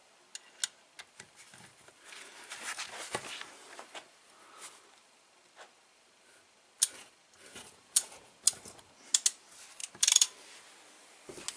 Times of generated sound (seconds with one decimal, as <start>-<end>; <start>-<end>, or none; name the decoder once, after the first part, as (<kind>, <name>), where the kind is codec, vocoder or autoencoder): 7.5-8.4 (vocoder, Vocos)